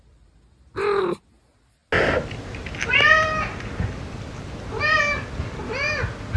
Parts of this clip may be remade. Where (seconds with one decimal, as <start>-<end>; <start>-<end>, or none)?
none